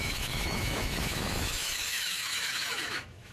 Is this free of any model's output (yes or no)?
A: no